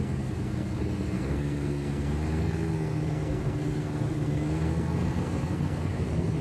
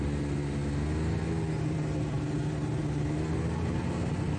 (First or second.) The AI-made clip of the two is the first